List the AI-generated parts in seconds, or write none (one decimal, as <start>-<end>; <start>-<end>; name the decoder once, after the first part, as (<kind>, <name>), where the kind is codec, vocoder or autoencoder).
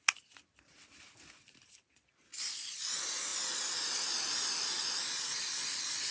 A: none